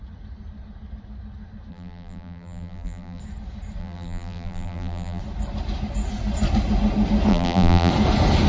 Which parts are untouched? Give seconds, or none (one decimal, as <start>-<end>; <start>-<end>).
0.0-1.7; 3.2-3.8; 5.2-7.3; 7.9-8.5